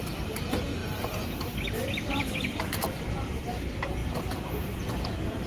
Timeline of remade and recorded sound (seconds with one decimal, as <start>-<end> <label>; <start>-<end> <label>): 0.0-5.5 recorded